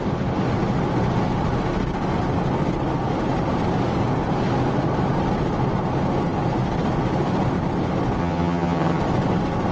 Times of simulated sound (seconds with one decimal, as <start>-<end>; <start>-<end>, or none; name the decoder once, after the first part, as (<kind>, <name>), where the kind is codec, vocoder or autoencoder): 8.2-9.0 (vocoder, HiFi-GAN)